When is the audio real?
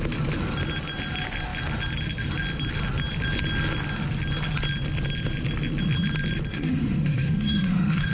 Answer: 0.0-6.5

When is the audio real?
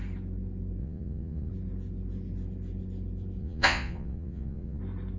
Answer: 0.0-0.8; 1.5-3.4; 4.8-5.2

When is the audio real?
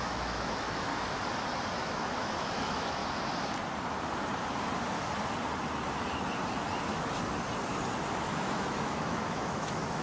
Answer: 0.9-1.8; 3.0-8.2